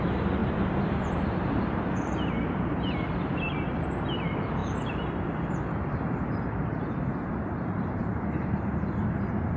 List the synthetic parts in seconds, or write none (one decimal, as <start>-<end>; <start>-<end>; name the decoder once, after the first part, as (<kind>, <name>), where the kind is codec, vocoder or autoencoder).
0.0-9.6 (vocoder, BigVGAN v2)

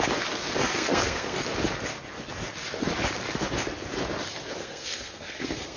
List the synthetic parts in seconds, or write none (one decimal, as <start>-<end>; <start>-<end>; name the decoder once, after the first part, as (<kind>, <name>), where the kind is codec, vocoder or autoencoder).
0.6-1.4 (codec, SNAC); 4.6-5.8